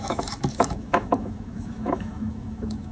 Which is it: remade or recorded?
remade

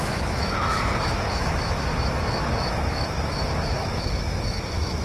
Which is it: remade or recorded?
remade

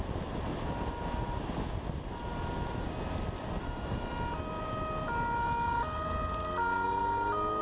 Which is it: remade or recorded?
recorded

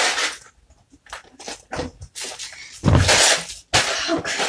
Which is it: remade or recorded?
recorded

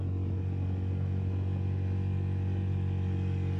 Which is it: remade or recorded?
recorded